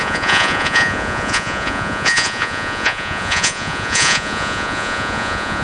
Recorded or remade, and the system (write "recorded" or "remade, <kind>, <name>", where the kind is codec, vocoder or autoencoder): remade, vocoder, Vocos